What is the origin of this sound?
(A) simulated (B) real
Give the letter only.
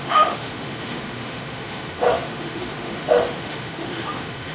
A